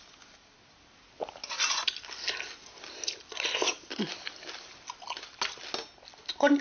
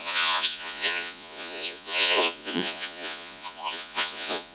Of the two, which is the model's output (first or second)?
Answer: second